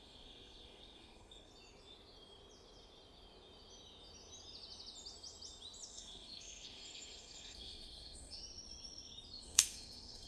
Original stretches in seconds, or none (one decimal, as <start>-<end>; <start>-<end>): 1.5-5.9; 8.4-9.4